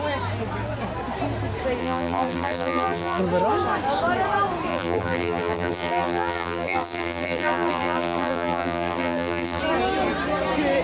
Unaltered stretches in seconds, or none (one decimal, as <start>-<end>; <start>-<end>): 0.0-1.8; 3.2-4.7; 9.6-10.8